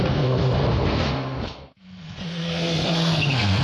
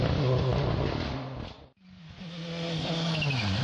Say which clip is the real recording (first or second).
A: second